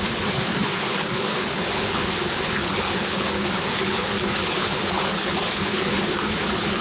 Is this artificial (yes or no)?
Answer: yes